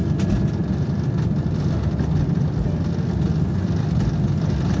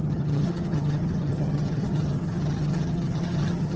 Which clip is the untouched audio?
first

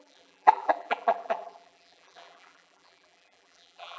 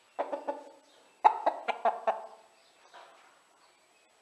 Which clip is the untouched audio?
second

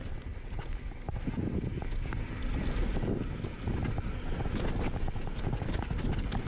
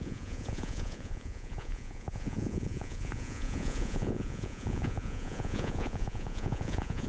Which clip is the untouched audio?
first